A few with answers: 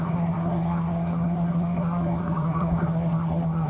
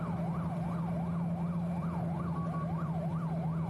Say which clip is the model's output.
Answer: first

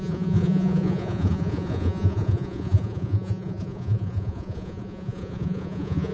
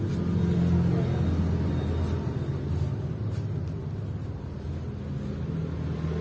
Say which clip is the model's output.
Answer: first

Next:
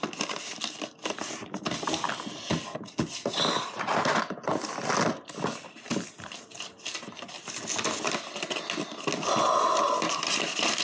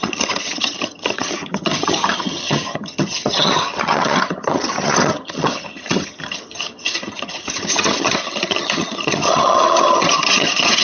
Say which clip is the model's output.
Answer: second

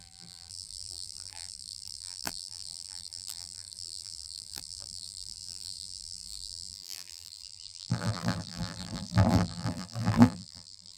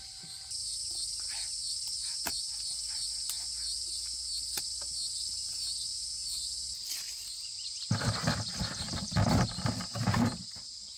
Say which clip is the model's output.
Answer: first